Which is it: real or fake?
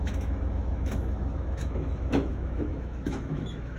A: fake